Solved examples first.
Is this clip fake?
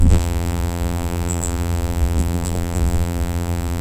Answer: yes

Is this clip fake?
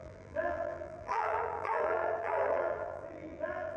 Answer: yes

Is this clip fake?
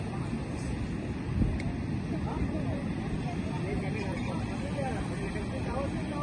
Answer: no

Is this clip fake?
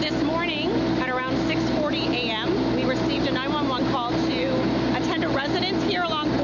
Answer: no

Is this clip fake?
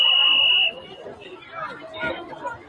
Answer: no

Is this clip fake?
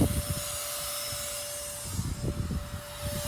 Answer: no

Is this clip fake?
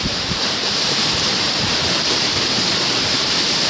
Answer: yes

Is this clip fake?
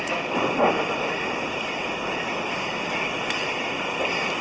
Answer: no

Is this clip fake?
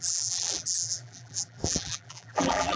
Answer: yes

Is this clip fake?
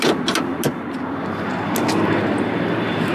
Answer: no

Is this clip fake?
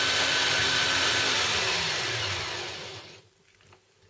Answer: no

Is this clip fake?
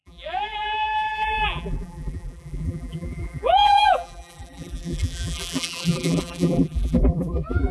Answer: yes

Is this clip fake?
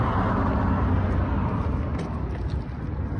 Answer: no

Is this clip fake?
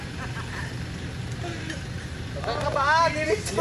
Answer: no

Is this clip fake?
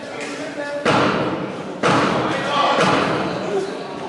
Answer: yes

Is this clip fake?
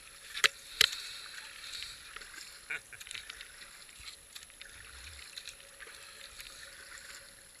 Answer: no